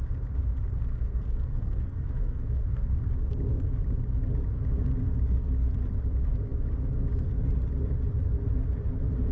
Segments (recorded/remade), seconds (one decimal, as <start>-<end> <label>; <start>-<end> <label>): 0.0-0.8 recorded; 0.8-3.1 remade; 3.1-9.3 recorded